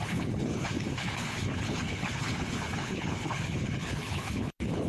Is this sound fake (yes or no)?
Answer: yes